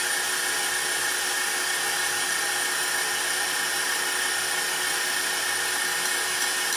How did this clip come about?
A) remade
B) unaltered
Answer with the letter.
B